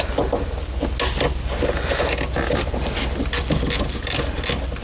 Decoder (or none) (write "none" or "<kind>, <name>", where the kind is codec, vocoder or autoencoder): none